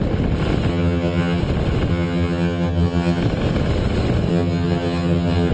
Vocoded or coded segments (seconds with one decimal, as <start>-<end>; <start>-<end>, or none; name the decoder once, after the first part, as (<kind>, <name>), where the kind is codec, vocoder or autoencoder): 0.7-1.4 (vocoder, HiFi-GAN); 1.9-3.2; 4.3-5.5